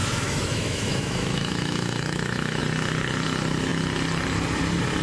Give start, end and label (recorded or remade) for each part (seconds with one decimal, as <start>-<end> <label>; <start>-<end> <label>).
0.0-2.6 remade; 2.6-5.0 recorded